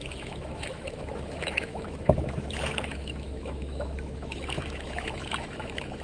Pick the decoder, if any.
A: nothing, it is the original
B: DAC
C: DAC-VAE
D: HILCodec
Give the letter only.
C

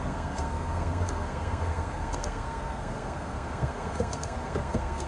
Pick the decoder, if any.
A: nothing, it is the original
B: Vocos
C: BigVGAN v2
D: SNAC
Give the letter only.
D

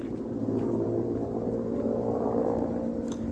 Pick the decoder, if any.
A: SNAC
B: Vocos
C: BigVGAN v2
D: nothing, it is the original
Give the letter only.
C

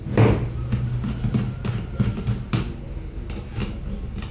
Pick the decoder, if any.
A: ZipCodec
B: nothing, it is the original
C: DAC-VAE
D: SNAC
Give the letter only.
B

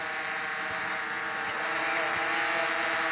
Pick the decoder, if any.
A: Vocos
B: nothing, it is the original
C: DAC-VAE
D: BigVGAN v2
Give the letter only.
D